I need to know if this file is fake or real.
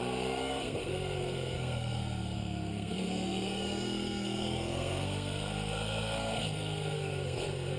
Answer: fake